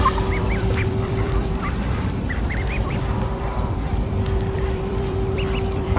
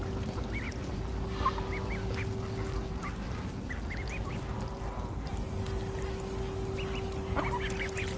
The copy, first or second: first